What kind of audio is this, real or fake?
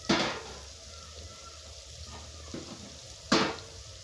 real